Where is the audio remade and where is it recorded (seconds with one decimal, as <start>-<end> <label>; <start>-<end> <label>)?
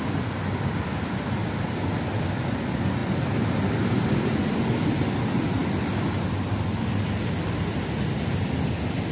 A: 0.0-9.1 recorded